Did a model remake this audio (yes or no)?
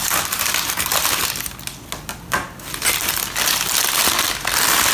no